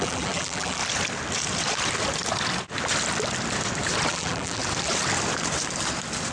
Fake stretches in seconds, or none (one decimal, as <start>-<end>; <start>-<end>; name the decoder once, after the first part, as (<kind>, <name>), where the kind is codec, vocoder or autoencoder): 0.0-0.8 (vocoder, BigVGAN v2); 4.1-4.6